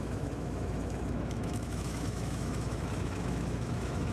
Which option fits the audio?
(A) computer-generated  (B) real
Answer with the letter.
A